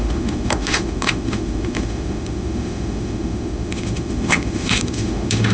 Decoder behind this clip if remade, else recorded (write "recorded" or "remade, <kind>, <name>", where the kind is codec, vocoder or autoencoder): remade, autoencoder, DAC-VAE